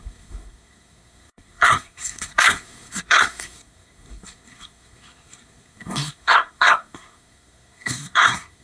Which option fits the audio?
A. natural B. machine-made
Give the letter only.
B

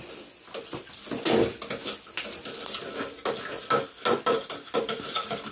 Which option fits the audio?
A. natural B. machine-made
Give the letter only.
A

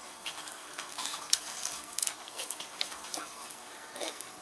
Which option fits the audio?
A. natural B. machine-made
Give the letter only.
B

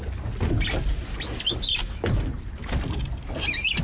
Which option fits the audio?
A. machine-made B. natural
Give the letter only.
B